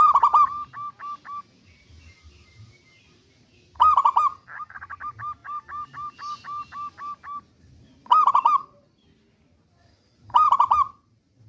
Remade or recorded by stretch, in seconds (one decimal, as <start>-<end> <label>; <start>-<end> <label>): 0.0-11.5 recorded